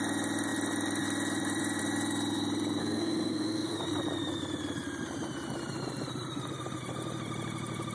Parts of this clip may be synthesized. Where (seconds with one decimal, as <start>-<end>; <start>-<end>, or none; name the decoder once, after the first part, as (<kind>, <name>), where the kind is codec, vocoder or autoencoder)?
2.8-3.8 (codec, SNAC)